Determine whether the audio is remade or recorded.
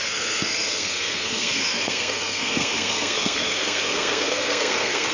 remade